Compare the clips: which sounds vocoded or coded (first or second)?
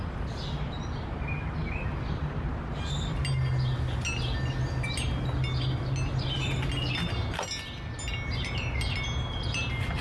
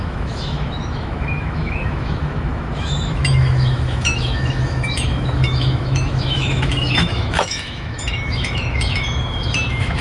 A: second